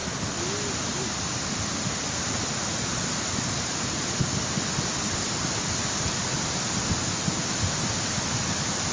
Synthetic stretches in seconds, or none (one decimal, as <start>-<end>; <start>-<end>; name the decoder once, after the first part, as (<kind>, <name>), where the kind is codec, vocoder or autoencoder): none